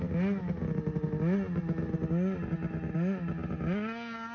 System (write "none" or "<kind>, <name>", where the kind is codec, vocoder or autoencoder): none